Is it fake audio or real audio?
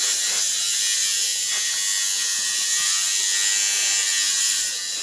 real